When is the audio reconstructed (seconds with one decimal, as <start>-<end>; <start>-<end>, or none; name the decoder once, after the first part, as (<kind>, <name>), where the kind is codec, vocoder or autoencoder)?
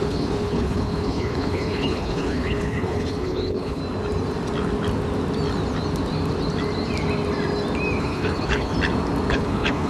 0.0-3.8 (codec, HILCodec); 8.0-8.7; 9.3-9.9